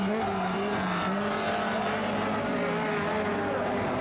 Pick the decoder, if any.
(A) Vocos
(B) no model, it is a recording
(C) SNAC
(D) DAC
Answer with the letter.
B